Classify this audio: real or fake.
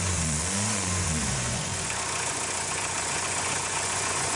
fake